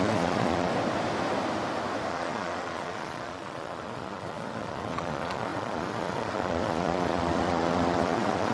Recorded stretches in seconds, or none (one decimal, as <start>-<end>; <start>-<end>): 0.7-2.1